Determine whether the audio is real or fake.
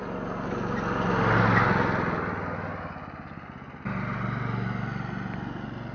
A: real